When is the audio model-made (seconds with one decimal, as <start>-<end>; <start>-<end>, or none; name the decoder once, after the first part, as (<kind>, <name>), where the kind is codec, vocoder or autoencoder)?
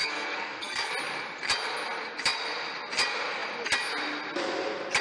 0.0-0.9 (codec, SNAC)